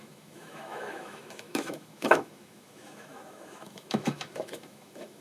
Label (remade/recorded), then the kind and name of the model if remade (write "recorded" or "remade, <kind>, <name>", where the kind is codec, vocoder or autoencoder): remade, autoencoder, DAC-VAE